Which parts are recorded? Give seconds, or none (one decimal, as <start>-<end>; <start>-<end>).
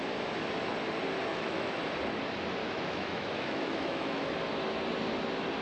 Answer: 0.0-1.3; 1.8-2.6; 4.2-5.6